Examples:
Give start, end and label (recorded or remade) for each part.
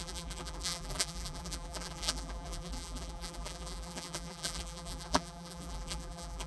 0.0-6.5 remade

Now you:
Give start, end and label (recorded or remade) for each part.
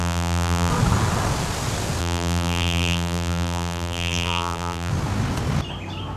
0.0-0.7 remade; 0.7-2.0 recorded; 2.0-4.9 remade; 4.9-6.2 recorded